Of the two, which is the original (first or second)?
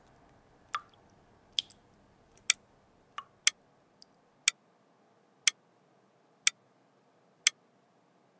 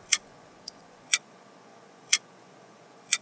first